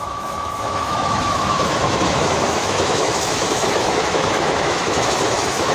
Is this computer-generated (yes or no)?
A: yes